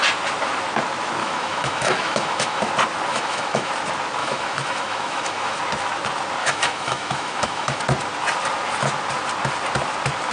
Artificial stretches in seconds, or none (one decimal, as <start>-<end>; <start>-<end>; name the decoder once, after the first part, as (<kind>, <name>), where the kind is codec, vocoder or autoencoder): 1.2-2.6 (autoencoder, DAC-VAE); 3.1-3.7; 4.2-5.6; 6.4-7.8